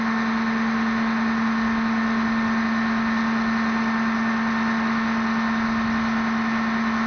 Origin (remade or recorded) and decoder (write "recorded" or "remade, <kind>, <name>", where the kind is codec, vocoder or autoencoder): recorded